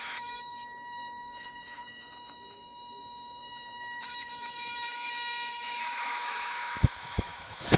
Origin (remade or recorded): remade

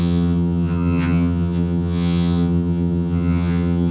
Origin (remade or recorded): remade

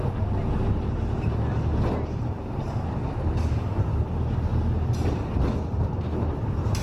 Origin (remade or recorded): recorded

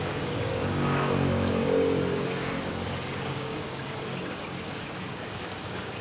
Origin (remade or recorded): remade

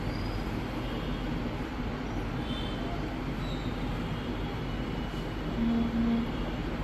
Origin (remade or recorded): recorded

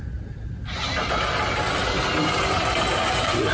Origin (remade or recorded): recorded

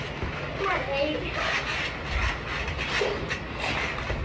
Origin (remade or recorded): recorded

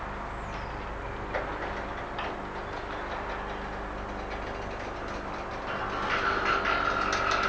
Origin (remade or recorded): recorded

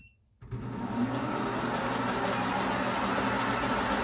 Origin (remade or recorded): recorded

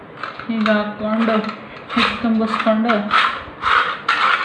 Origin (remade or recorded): recorded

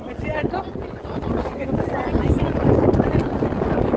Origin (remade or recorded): recorded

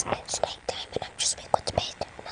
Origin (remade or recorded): recorded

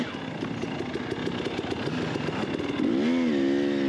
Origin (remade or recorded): recorded